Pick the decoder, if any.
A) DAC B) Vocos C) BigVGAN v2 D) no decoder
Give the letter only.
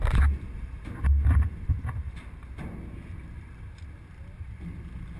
D